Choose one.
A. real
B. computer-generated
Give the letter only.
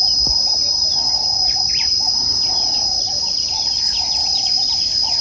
A